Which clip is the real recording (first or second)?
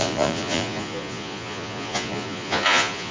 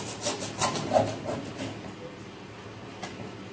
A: second